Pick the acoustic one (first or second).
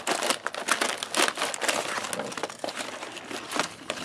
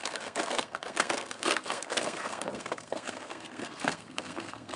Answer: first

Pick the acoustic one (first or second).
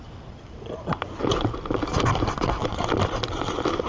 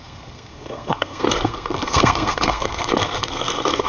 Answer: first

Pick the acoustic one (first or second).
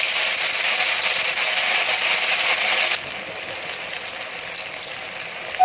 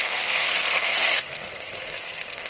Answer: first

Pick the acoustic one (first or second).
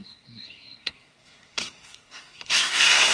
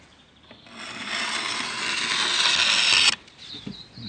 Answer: second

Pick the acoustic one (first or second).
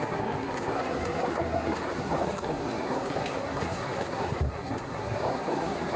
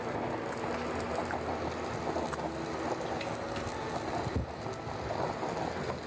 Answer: second